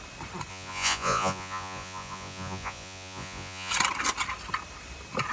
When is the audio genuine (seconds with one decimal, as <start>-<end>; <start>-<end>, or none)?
0.0-0.5; 3.7-5.3